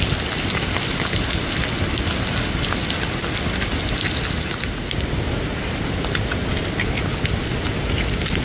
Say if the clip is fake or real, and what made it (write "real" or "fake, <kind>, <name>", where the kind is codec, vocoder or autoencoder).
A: real